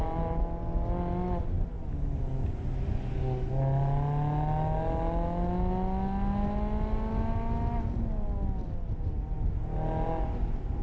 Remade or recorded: recorded